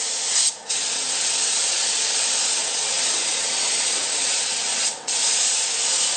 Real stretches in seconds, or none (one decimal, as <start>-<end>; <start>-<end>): 0.0-0.6; 2.2-2.6; 5.2-6.2